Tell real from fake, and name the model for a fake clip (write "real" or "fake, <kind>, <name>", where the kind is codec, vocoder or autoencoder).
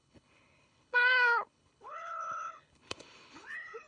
fake, codec, HILCodec